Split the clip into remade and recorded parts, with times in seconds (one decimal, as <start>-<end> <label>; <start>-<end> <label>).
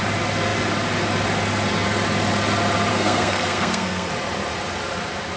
0.0-2.9 recorded; 2.9-4.1 remade; 4.1-5.4 recorded